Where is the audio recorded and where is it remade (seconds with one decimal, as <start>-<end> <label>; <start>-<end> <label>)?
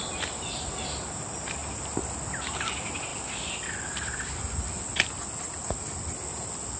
0.0-6.8 recorded